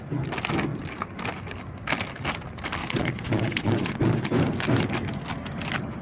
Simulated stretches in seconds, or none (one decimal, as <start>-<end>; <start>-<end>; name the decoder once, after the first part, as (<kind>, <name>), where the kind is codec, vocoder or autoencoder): 2.8-4.2 (vocoder, Vocos)